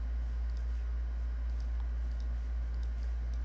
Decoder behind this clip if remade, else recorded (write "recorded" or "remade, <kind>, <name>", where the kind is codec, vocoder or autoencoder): recorded